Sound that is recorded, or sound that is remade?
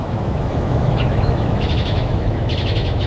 remade